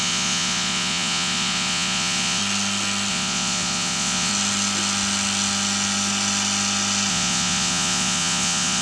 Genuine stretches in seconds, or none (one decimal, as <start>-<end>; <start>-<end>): 2.4-3.1; 4.3-7.1